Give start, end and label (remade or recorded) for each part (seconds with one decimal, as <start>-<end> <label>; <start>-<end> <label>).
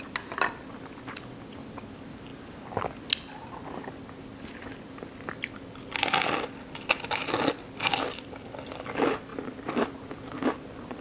0.0-9.3 recorded; 9.3-9.9 remade; 9.9-11.0 recorded